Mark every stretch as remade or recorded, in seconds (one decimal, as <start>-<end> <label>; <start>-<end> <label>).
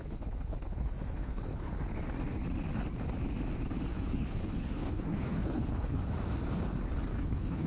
0.0-1.7 remade; 1.7-3.9 recorded; 3.9-6.0 remade; 6.0-7.1 recorded; 7.1-7.7 remade